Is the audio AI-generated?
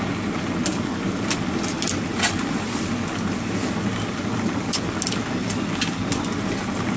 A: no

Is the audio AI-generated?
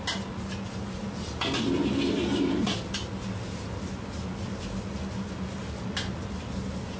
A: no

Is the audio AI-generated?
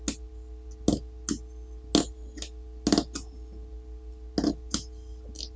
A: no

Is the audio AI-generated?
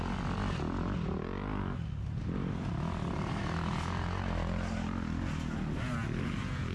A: no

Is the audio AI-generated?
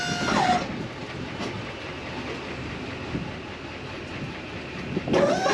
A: no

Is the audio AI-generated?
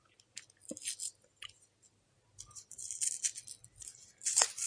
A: no